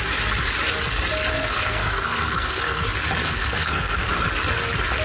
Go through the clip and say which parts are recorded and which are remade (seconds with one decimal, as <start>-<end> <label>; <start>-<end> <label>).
0.0-1.3 recorded; 1.3-2.8 remade; 2.8-3.2 recorded; 3.2-4.1 remade; 4.1-5.0 recorded